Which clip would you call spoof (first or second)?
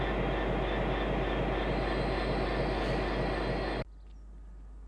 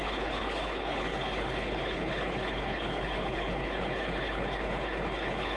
second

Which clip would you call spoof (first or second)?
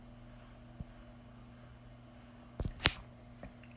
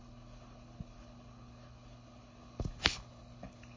second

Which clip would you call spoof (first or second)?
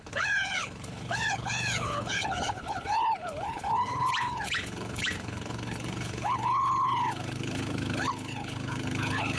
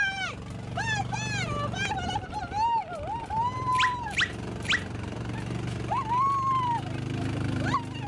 first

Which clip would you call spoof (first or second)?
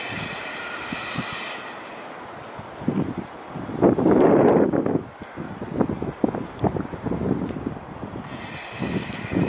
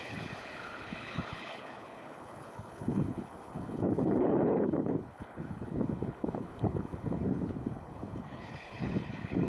second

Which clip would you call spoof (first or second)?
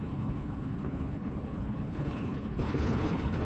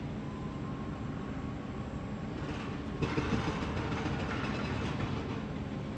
first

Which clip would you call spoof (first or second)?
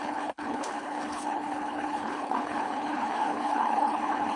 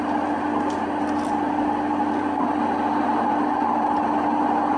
first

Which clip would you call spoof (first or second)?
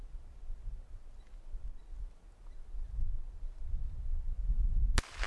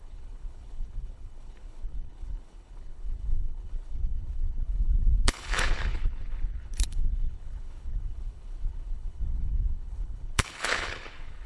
second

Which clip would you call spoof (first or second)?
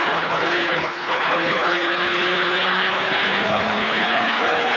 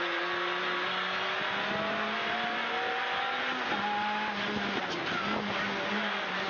first